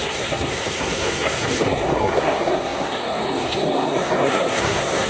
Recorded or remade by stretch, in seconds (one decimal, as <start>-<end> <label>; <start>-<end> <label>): 0.0-5.1 remade